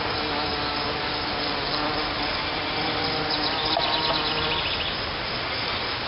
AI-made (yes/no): no